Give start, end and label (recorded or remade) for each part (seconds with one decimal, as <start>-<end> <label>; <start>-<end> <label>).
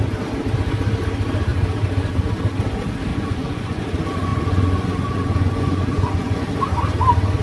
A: 0.0-3.1 recorded; 3.1-3.8 remade; 3.8-4.3 recorded; 4.3-6.5 remade; 6.5-7.4 recorded